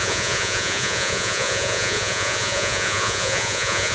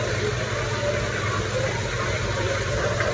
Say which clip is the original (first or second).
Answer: second